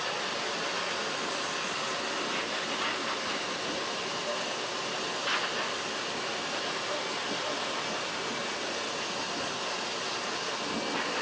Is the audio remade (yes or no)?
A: no